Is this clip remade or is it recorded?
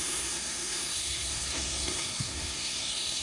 remade